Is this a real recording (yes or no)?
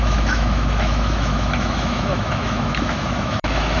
no